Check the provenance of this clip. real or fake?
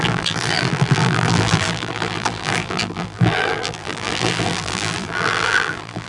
fake